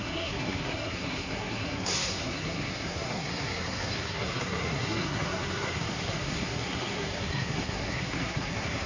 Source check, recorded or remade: remade